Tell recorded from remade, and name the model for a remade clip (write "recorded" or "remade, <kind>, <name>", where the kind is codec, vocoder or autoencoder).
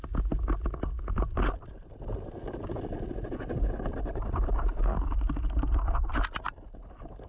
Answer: recorded